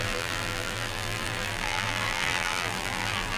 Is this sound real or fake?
fake